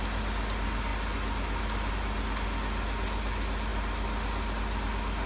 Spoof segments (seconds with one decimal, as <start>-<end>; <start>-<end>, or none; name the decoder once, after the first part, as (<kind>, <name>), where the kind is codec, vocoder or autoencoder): none